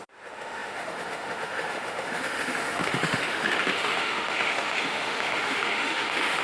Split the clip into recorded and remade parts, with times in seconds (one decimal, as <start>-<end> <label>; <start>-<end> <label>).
0.0-6.4 remade